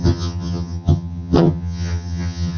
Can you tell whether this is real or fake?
fake